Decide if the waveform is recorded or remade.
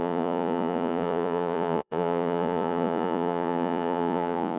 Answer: remade